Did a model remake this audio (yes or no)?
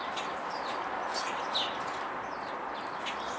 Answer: no